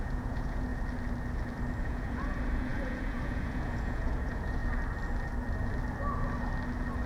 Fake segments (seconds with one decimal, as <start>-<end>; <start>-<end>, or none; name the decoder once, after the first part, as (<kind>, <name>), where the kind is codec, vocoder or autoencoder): 0.0-0.7 (vocoder, Vocos); 1.8-4.6